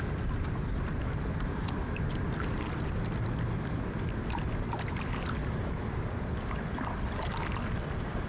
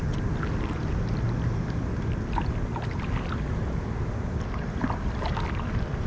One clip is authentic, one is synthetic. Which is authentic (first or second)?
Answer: second